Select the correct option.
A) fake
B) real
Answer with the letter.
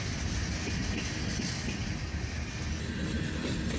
B